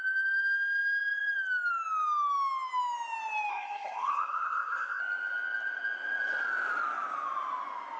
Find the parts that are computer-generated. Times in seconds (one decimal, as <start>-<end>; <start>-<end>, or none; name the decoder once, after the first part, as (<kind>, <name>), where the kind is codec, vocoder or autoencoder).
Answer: 3.5-5.0 (codec, SNAC)